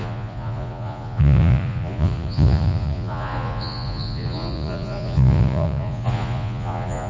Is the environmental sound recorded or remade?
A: remade